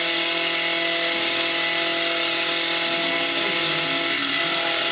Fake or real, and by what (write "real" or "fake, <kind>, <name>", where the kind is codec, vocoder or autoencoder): real